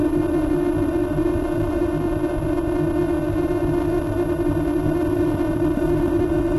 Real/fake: real